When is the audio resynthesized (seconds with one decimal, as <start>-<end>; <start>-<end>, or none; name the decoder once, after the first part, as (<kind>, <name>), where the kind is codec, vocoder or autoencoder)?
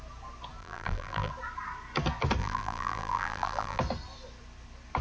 0.6-1.3 (vocoder, BigVGAN v2); 2.4-3.8